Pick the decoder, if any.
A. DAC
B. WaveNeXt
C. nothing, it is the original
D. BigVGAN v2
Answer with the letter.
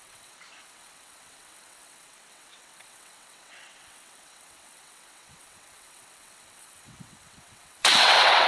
B